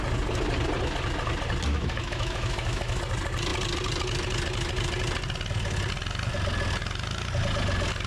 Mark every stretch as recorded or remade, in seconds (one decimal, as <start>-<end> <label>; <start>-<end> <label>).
0.0-1.7 recorded; 1.7-3.0 remade; 3.0-8.1 recorded